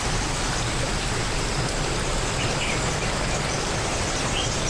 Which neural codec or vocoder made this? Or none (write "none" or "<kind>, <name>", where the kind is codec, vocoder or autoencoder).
none